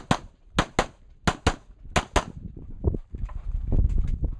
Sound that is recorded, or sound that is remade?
recorded